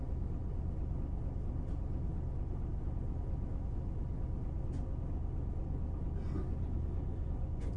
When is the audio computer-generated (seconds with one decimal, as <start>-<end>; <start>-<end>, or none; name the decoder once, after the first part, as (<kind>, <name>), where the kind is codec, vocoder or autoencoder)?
7.1-7.8 (vocoder, Vocos)